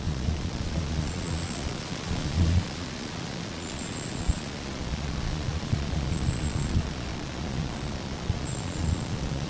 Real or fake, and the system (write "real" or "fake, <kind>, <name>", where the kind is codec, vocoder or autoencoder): fake, vocoder, Vocos